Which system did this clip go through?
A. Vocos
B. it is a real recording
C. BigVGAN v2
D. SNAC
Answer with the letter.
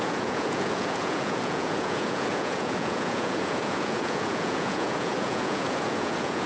A